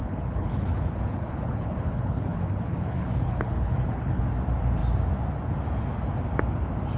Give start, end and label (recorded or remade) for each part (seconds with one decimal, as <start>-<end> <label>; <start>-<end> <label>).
0.0-4.2 remade; 4.2-7.0 recorded